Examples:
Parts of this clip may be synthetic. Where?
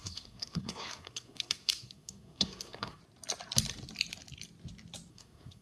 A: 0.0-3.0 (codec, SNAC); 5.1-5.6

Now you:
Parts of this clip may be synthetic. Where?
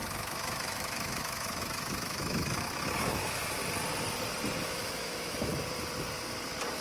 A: 0.0-3.6 (autoencoder, DAC-VAE); 4.6-5.5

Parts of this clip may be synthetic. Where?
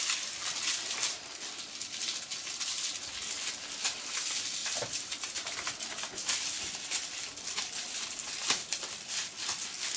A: 4.6-5.7 (vocoder, BigVGAN v2)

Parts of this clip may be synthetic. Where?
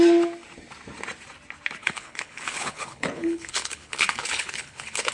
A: 1.8-5.1 (codec, HILCodec)